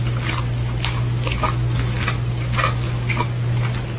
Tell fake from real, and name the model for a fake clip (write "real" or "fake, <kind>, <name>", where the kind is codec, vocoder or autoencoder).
real